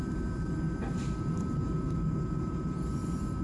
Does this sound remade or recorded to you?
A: remade